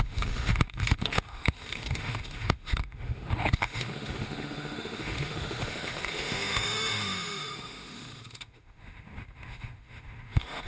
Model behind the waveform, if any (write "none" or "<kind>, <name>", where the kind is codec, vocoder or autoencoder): autoencoder, DAC-VAE